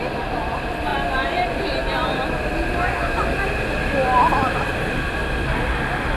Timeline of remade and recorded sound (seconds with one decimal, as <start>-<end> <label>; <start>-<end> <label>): 0.0-0.9 remade; 0.9-4.3 recorded; 4.3-6.2 remade